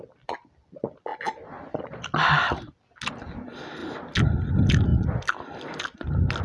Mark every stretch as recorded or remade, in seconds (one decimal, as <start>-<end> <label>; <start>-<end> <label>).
0.0-6.4 recorded